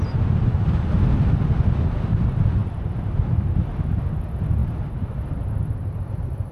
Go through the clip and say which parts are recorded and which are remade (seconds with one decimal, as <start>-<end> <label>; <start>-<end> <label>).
0.0-2.6 recorded; 2.6-3.7 remade; 3.7-4.6 recorded; 4.6-5.1 remade; 5.1-6.5 recorded